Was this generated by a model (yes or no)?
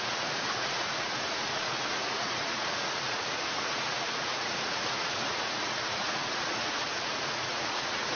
yes